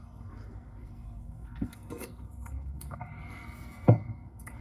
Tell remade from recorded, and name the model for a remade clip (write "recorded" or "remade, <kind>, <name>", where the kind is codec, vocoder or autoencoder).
remade, codec, SNAC